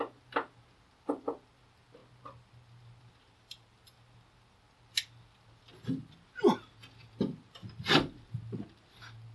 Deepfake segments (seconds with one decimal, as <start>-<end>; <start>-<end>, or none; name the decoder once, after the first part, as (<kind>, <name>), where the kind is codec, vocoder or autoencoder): none